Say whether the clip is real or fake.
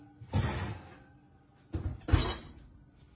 real